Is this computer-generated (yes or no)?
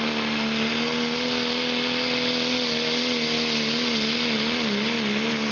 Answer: no